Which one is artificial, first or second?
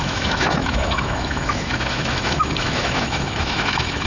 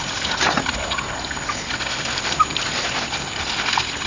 first